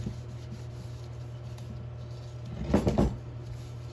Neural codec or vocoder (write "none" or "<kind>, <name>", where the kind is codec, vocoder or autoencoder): none